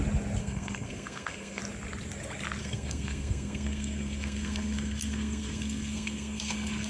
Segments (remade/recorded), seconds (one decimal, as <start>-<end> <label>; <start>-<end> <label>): 0.0-0.4 recorded; 0.4-1.6 remade; 1.6-2.6 recorded; 2.6-6.9 remade